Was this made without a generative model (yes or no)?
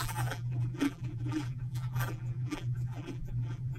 no